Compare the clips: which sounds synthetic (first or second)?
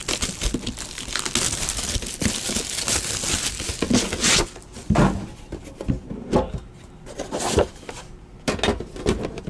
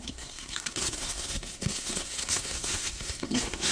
second